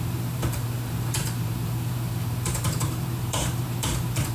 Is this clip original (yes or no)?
no